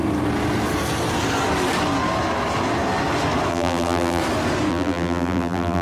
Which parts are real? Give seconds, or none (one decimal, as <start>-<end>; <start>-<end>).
0.0-3.5; 4.2-4.7